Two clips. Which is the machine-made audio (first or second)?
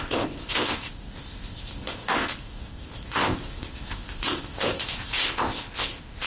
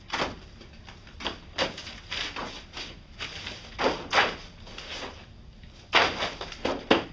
first